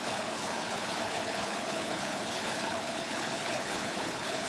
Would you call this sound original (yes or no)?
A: no